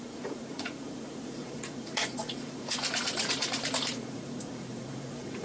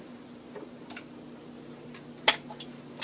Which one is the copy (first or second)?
first